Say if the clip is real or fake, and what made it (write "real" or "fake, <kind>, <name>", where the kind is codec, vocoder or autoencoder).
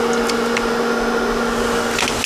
real